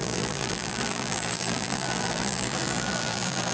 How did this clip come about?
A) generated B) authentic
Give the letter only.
A